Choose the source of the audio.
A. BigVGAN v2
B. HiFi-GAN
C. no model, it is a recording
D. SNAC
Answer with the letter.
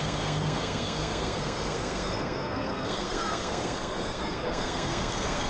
D